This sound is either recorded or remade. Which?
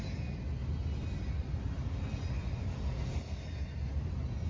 recorded